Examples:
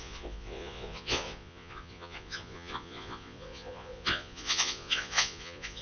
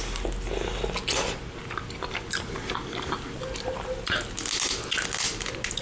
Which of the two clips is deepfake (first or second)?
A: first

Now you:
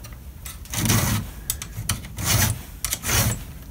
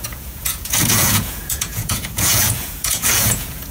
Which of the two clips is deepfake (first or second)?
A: second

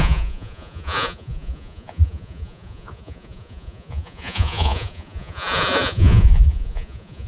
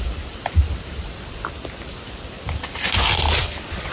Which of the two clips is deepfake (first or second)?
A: first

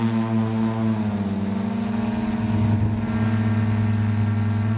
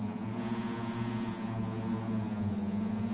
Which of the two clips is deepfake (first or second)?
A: second